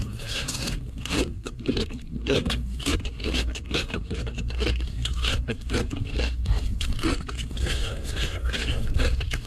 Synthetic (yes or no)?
yes